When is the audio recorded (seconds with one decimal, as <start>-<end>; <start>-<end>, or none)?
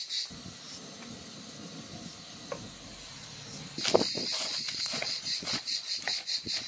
0.0-4.0